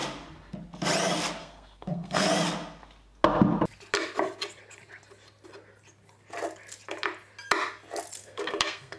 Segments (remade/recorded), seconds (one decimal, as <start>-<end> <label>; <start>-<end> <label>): 0.0-1.4 recorded; 1.4-2.3 remade; 2.3-8.2 recorded; 8.2-9.0 remade